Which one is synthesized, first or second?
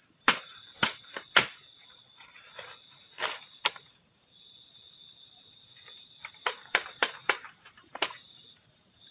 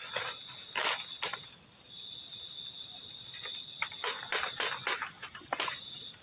first